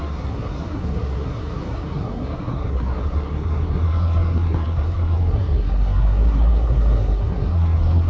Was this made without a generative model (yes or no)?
no